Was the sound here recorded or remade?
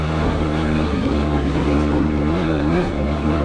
remade